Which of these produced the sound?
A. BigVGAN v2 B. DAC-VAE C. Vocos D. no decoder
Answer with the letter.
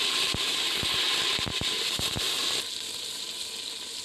D